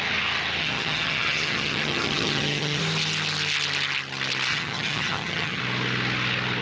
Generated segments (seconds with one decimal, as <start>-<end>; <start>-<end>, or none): 0.6-2.8; 4.5-5.6